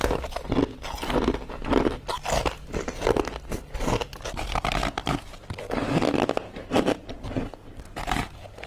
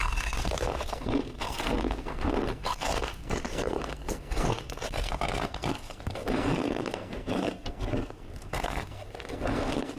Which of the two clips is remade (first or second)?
second